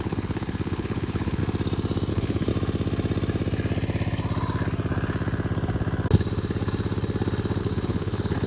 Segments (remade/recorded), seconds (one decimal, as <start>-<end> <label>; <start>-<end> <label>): 0.0-1.4 remade; 1.4-2.1 recorded; 2.1-2.5 remade; 2.5-7.6 recorded; 7.6-8.5 remade